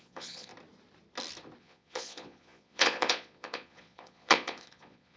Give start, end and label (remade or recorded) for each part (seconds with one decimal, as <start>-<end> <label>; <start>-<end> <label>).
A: 0.0-0.5 remade; 0.5-1.6 recorded; 1.6-5.2 remade

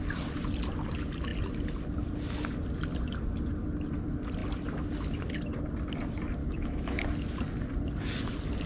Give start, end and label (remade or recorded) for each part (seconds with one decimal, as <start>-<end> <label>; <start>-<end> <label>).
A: 0.0-6.4 recorded; 6.4-7.0 remade; 7.0-8.7 recorded